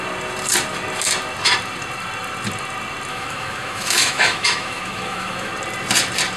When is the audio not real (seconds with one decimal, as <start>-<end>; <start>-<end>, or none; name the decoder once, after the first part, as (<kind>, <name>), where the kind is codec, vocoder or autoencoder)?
3.1-5.5 (autoencoder, DAC-VAE)